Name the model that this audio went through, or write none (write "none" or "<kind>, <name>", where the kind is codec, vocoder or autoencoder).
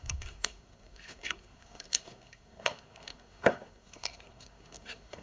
codec, SNAC